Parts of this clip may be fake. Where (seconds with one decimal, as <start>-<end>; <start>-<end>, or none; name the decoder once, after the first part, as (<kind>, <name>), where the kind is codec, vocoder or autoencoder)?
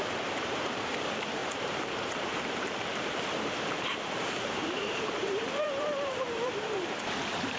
0.0-7.6 (vocoder, BigVGAN v2)